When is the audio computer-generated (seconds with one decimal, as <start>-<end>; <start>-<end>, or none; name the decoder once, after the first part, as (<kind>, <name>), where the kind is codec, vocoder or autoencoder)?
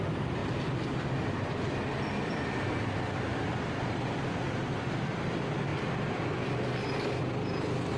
none